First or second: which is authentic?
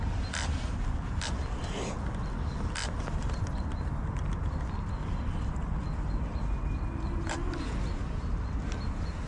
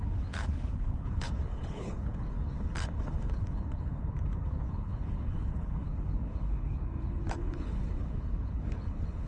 first